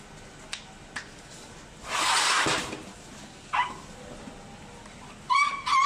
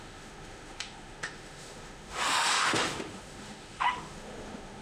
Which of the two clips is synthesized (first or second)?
second